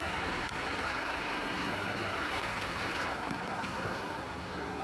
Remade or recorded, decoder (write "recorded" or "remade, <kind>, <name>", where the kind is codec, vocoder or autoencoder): remade, codec, SNAC